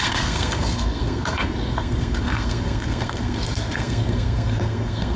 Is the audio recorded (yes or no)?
no